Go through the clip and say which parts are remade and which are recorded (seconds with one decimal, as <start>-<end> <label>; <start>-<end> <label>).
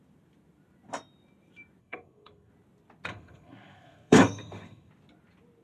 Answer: 0.0-1.8 recorded; 1.8-2.5 remade; 2.5-3.1 recorded; 3.1-4.9 remade; 4.9-5.6 recorded